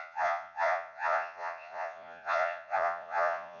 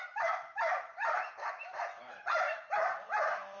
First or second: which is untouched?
second